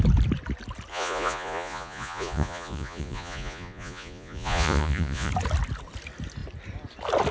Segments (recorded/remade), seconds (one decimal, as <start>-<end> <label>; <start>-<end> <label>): 0.0-0.9 recorded; 0.9-5.3 remade; 5.3-7.3 recorded